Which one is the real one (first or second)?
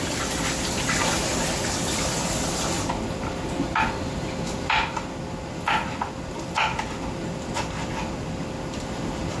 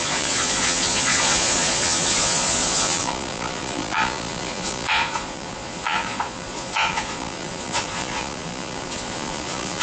first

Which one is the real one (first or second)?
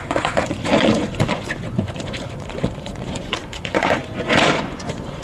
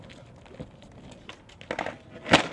second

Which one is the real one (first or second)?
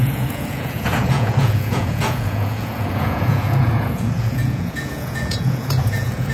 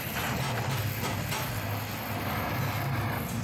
second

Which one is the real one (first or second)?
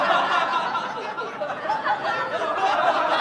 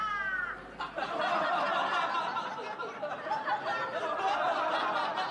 second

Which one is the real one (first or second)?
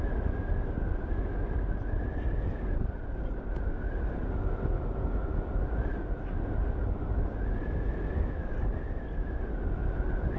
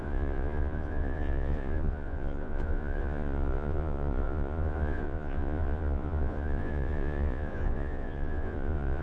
first